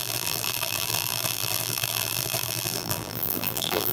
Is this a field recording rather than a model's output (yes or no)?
no